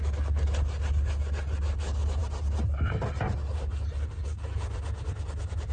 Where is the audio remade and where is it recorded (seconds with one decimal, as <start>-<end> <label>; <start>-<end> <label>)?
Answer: 0.0-5.7 recorded